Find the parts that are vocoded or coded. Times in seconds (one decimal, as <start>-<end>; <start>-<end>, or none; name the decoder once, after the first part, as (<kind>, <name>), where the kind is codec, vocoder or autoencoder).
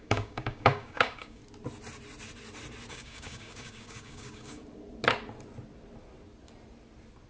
0.0-1.4 (codec, DAC); 2.9-4.6